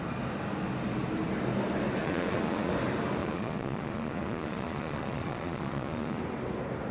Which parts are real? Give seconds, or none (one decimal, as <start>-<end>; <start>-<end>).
0.0-2.0; 2.7-3.2; 6.2-6.9